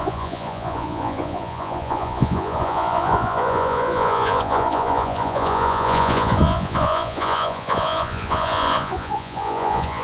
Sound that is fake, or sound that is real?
fake